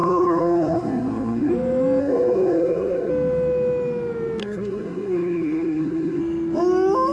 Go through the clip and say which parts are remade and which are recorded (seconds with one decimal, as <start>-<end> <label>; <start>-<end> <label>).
0.0-1.5 remade; 1.5-2.0 recorded; 2.0-3.1 remade; 3.1-4.4 recorded; 4.4-6.2 remade; 6.2-7.1 recorded